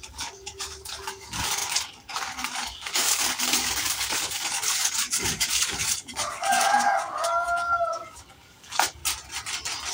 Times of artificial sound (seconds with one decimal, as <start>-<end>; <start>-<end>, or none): 0.0-9.0